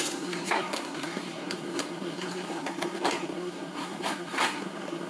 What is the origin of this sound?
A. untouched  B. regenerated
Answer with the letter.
B